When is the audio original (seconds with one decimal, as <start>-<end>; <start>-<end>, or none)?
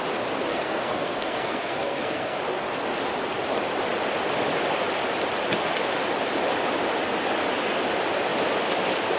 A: 0.0-0.5; 2.4-9.2